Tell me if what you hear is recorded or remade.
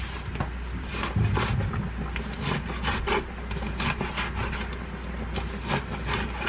recorded